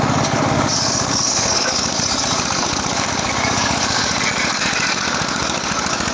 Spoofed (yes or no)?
yes